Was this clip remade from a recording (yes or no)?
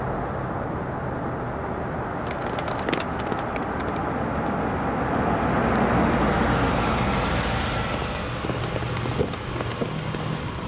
no